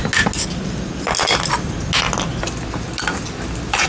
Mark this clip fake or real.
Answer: real